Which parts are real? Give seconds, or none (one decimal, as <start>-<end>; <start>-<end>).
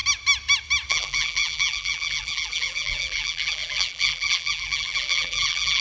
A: 0.0-0.9